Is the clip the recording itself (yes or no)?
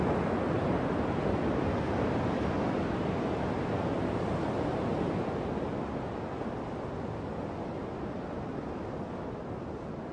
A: yes